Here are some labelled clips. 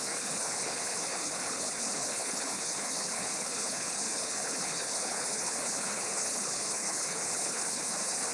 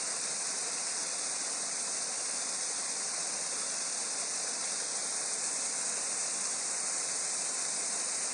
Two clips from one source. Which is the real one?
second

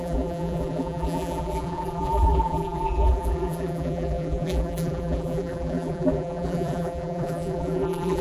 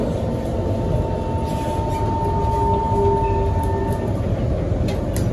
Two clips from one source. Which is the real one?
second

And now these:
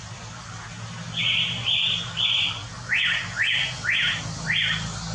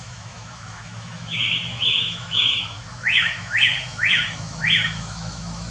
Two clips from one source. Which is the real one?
first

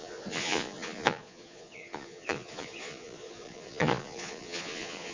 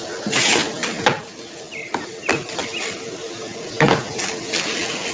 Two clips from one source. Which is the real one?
second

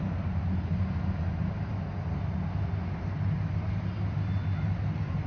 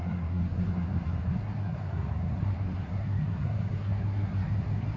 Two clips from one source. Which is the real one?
first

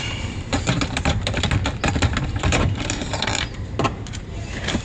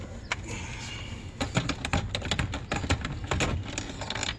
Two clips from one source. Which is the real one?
second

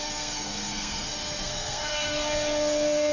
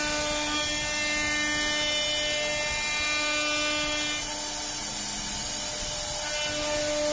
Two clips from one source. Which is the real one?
second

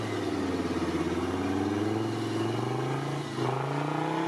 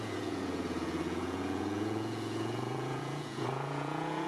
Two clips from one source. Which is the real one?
first